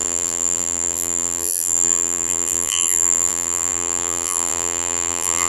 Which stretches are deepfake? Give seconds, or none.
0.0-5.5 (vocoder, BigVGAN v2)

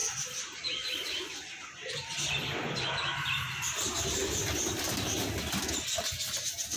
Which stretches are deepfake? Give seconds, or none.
0.0-1.5 (vocoder, BigVGAN v2); 4.2-5.2

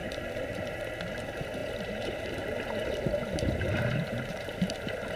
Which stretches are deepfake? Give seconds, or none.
0.0-0.9 (vocoder, BigVGAN v2); 1.6-4.7